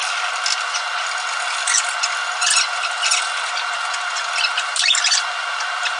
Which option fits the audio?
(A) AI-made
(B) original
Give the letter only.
B